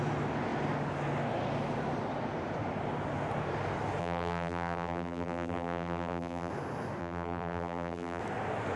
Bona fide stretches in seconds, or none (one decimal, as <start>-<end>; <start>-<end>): 0.0-4.0; 6.5-7.0; 8.2-8.8